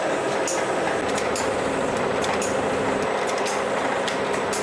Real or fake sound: real